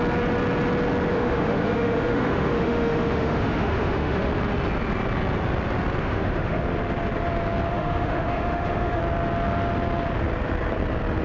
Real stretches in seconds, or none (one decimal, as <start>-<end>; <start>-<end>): 0.0-1.1; 4.3-6.0; 6.6-7.7; 9.0-11.2